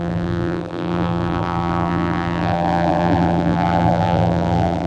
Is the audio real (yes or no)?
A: no